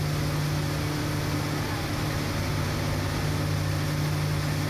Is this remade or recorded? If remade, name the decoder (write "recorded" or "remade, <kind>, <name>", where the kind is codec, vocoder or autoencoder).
recorded